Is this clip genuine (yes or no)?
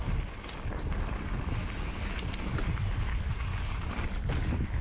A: yes